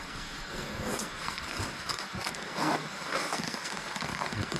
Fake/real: fake